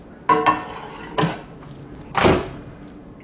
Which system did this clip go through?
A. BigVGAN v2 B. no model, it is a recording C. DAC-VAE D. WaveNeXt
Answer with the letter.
B